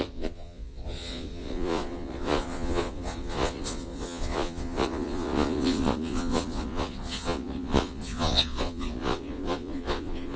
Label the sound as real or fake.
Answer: fake